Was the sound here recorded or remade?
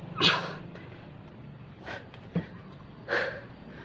remade